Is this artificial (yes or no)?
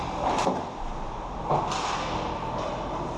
no